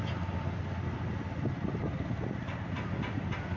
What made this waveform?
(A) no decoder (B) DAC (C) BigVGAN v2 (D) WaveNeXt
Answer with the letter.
A